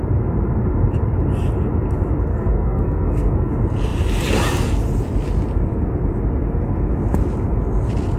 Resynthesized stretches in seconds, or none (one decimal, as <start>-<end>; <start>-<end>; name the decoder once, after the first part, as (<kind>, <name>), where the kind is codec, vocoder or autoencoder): 2.3-3.5 (codec, SNAC)